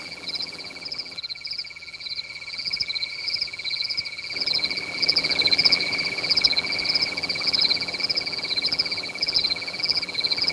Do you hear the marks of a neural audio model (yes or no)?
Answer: yes